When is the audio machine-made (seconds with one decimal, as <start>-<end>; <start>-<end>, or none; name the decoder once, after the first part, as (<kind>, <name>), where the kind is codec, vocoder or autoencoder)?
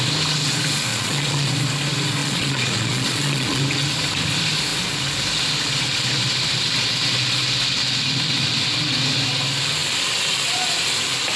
0.9-1.5 (vocoder, Vocos); 2.2-3.6